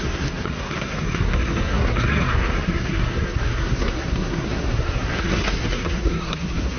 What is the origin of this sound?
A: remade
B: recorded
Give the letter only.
A